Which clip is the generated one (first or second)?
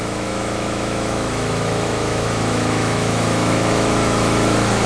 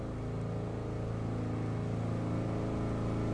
first